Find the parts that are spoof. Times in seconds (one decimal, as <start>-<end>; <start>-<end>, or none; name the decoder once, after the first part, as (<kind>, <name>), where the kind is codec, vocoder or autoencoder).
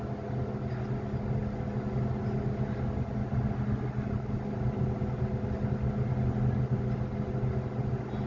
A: none